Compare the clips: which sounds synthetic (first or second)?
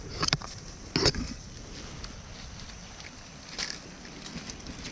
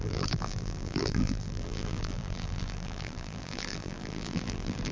second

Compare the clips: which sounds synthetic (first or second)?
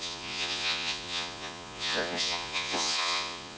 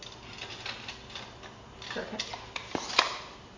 first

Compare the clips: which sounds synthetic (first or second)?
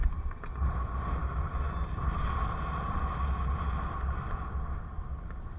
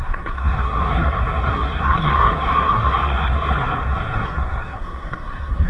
second